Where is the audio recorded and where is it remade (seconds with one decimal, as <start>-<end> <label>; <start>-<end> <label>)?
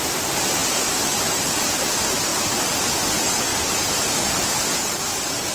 0.0-5.5 recorded